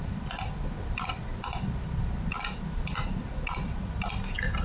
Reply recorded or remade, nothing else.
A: recorded